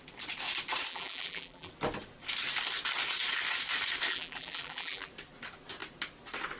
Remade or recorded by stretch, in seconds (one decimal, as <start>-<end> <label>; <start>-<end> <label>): 0.0-0.9 recorded; 0.9-1.7 remade; 1.7-4.1 recorded; 4.1-5.1 remade; 5.1-6.6 recorded

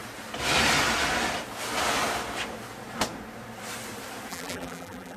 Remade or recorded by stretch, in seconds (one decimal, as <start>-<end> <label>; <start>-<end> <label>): 0.0-4.3 recorded; 4.3-5.2 remade